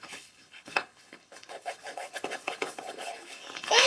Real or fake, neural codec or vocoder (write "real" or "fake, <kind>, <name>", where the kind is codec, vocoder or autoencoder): fake, codec, HILCodec